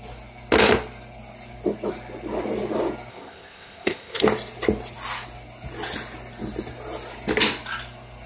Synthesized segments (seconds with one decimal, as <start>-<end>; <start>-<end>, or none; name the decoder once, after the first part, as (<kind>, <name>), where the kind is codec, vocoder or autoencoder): 3.1-4.2 (codec, ZipCodec)